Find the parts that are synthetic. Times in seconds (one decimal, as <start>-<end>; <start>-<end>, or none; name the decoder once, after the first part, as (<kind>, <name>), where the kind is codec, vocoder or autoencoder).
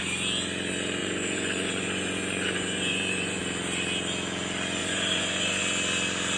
1.0-3.4 (vocoder, Vocos); 4.8-5.6